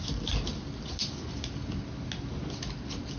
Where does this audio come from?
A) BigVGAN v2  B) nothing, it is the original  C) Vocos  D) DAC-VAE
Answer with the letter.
B